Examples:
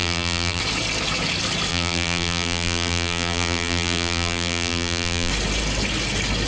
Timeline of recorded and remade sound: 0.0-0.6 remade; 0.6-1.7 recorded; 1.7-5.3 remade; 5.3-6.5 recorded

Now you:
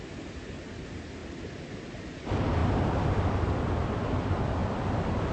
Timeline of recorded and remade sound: 0.0-1.2 recorded; 1.2-1.9 remade; 1.9-2.6 recorded; 2.6-3.2 remade; 3.2-4.6 recorded; 4.6-5.3 remade